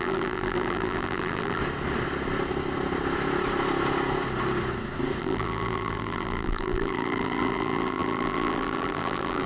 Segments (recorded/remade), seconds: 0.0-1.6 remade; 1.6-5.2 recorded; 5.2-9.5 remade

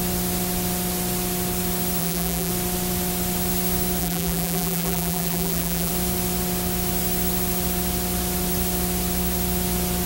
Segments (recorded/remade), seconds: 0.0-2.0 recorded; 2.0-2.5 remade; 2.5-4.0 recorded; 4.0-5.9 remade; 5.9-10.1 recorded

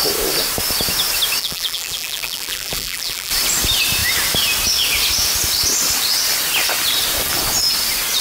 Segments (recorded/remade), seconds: 0.0-1.4 recorded; 1.4-3.3 remade; 3.3-8.2 recorded